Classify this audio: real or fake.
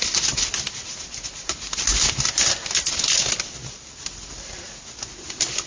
real